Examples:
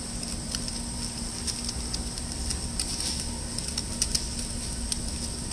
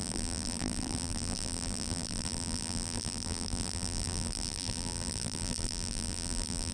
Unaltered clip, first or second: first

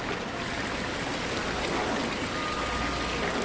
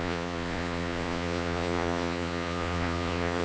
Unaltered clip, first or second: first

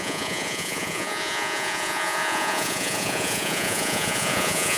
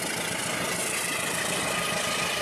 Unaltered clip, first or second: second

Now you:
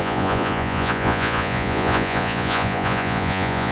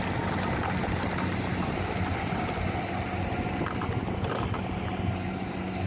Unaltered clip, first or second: second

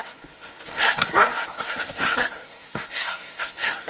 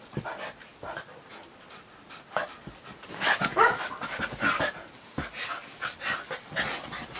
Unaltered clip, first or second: second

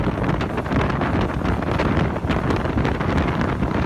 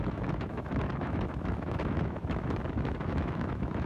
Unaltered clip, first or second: first